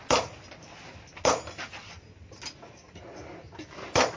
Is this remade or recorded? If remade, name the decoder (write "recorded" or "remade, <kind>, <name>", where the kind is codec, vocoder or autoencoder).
recorded